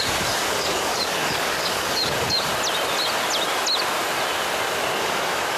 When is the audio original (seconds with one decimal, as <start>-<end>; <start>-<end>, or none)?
2.5-5.0